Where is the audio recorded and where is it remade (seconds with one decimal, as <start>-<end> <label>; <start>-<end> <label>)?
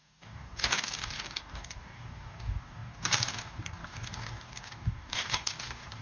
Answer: 0.0-6.0 remade